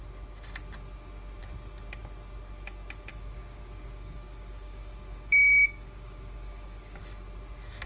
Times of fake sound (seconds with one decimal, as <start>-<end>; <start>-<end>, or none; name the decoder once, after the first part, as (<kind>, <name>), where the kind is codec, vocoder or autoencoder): 3.1-7.0 (codec, DAC)